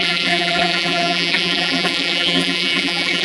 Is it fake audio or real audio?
fake